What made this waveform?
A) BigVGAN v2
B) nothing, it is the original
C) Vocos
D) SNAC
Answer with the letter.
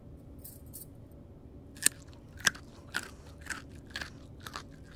B